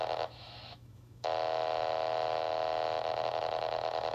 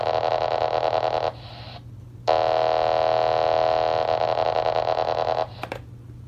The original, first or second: second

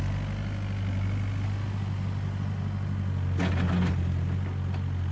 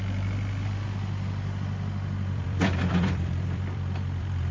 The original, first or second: first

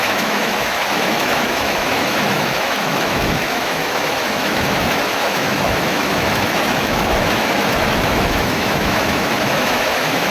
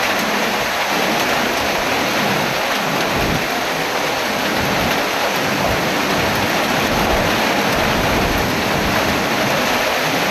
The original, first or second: second